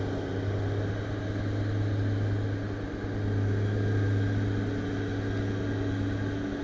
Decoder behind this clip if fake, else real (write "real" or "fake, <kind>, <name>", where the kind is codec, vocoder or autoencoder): real